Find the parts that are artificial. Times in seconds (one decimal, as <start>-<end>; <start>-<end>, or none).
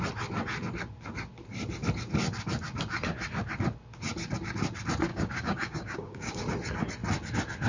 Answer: 5.1-6.4